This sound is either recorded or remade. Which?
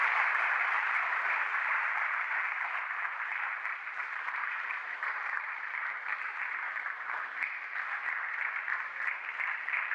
remade